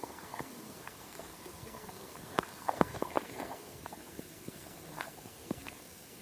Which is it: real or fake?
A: fake